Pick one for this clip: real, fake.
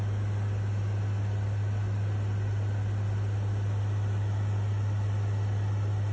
real